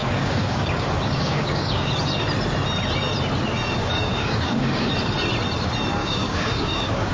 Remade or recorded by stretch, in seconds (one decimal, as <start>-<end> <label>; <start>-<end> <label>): 0.0-1.9 remade; 1.9-3.8 recorded; 3.8-4.9 remade; 4.9-6.0 recorded; 6.0-7.1 remade